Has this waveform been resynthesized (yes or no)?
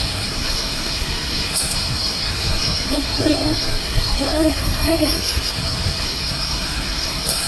yes